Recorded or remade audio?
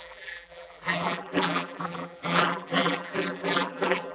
remade